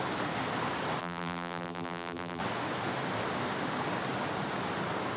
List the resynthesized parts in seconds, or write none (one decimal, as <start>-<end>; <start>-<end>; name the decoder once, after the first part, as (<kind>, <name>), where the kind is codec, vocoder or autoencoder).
1.0-2.4 (vocoder, BigVGAN v2)